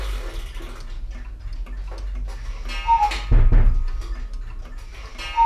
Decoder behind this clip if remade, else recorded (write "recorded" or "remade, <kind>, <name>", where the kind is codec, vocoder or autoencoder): recorded